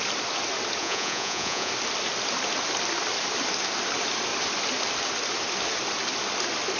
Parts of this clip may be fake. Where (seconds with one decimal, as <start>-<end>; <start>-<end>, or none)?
0.8-1.7